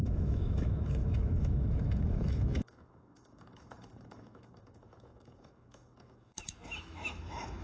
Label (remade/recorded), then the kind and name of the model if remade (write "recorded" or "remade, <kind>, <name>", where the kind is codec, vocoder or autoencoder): remade, autoencoder, DAC-VAE